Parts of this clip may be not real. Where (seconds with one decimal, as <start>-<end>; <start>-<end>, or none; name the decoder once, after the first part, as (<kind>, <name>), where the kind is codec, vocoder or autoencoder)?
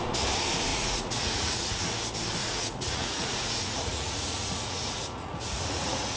0.7-1.8 (vocoder, Vocos); 2.4-6.2